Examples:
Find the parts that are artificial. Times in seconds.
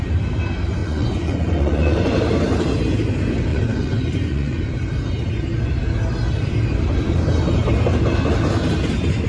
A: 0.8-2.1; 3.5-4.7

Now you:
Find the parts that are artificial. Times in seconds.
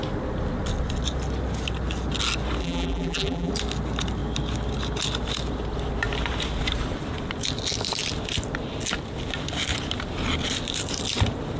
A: 2.6-3.5